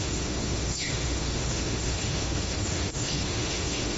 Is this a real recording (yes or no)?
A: no